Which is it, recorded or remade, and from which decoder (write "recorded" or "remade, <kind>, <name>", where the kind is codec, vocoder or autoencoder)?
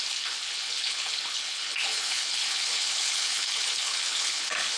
remade, codec, HILCodec